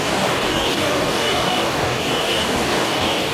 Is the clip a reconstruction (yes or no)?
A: yes